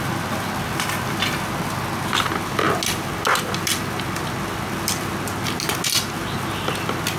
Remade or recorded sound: recorded